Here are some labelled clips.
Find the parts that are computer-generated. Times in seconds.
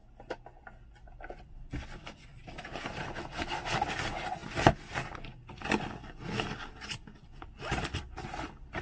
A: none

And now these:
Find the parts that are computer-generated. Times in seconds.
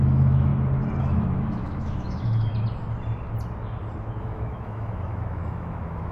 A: 0.0-0.5; 1.0-2.5; 4.2-6.1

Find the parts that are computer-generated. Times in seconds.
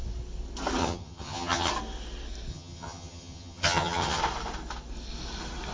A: 0.8-1.7; 2.5-4.2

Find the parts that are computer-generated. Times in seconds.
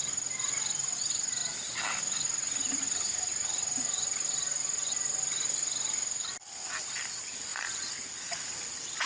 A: none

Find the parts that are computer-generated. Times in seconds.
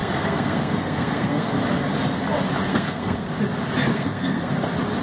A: 0.0-1.6; 2.7-3.3; 3.9-4.5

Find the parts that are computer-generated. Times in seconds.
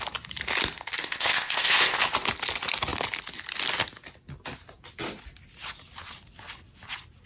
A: 1.0-2.0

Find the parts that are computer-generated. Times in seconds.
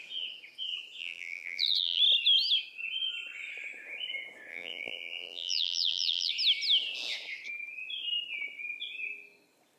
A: 1.0-2.0; 4.5-6.3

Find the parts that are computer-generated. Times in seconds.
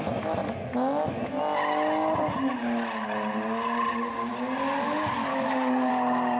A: 5.3-5.9